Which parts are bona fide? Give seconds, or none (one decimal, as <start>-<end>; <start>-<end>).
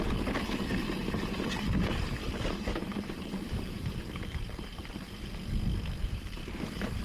0.0-1.0; 5.2-6.0